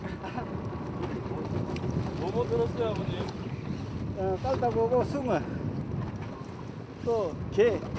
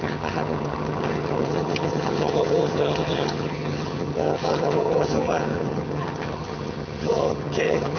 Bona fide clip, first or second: first